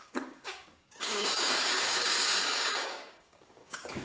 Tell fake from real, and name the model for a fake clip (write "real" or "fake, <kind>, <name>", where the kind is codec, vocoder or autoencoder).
fake, codec, DAC